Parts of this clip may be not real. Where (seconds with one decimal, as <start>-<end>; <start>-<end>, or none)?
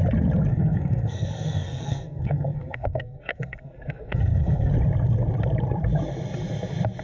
0.5-4.7